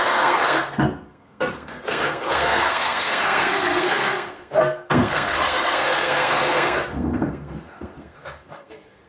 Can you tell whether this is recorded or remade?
remade